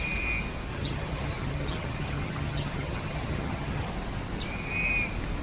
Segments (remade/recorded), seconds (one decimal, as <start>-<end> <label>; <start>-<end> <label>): 0.0-0.7 recorded; 0.7-3.9 remade; 3.9-5.4 recorded